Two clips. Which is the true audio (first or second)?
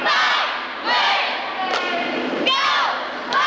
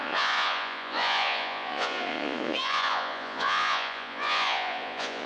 first